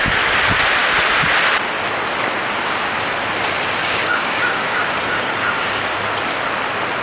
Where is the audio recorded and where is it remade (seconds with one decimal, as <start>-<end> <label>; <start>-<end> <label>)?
0.0-3.8 recorded; 3.8-5.9 remade; 5.9-7.0 recorded